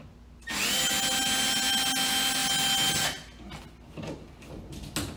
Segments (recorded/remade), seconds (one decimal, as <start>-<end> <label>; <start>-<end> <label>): 0.0-5.2 recorded

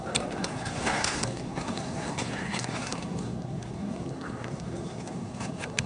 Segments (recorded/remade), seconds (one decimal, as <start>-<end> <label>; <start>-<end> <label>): 0.0-5.9 remade